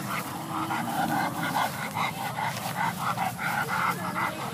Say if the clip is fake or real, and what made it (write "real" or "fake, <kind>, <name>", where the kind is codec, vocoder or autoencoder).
real